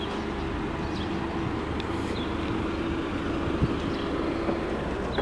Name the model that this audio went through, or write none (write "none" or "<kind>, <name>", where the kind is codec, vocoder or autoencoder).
none